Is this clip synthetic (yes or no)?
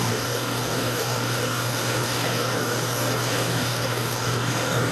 yes